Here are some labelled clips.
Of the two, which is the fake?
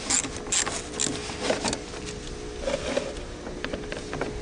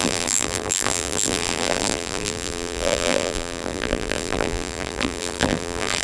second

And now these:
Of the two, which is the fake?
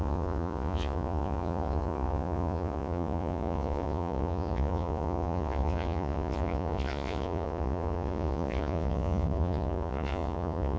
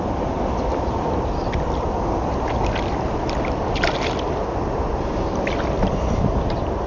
first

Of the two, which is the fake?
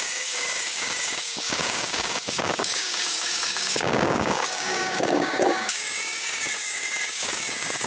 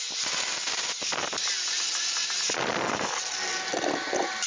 first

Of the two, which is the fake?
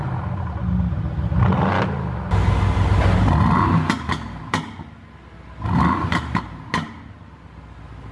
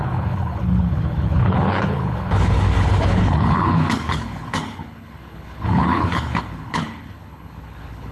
second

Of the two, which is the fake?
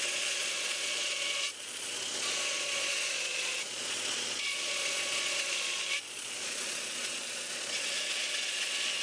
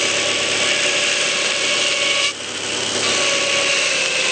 first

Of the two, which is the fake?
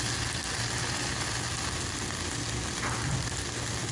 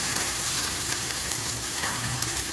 second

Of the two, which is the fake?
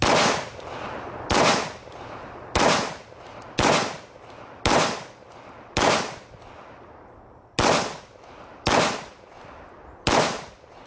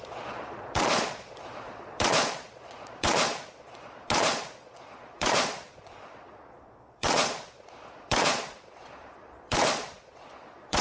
second